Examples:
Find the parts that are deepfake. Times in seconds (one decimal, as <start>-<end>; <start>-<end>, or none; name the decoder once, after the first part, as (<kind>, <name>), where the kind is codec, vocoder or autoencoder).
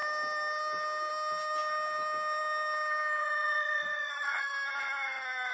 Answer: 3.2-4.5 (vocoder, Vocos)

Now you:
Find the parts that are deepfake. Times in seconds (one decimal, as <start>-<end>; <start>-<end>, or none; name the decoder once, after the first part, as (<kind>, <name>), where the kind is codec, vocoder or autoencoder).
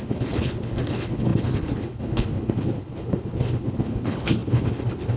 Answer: 0.0-5.2 (codec, HILCodec)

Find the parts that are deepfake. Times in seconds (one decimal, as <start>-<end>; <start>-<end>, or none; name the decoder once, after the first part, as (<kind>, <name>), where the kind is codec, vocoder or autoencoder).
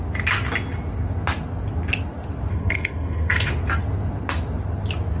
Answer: 2.5-3.5 (codec, SNAC)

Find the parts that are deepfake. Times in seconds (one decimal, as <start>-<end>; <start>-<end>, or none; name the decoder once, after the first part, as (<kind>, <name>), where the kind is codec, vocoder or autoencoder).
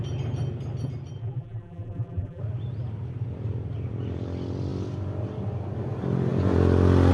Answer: 1.2-2.4 (vocoder, BigVGAN v2)